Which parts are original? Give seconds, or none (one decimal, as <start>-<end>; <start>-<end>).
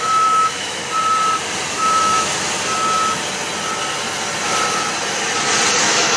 0.8-1.7; 2.3-5.8